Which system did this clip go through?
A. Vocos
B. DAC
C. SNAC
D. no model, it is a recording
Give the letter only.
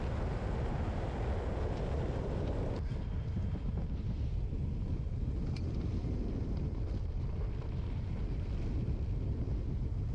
D